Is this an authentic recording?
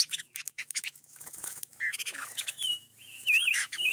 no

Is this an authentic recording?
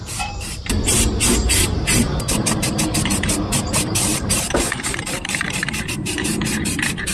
no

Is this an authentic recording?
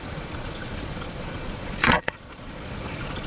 no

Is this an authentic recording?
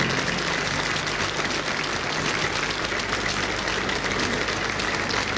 yes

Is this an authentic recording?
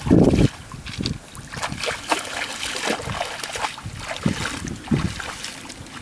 yes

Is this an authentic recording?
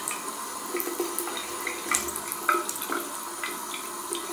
yes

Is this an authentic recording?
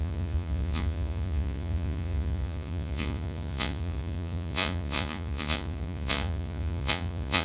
no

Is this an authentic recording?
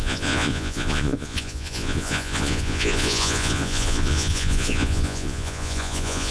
no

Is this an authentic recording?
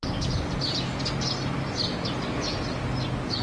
yes